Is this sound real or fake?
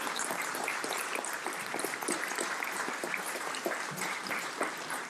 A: fake